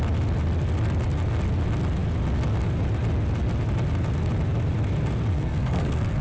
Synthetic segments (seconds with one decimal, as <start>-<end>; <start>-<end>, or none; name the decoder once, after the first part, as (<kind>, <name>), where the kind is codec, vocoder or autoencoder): 5.3-6.2 (codec, SNAC)